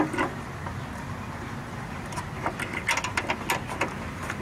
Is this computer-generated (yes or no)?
no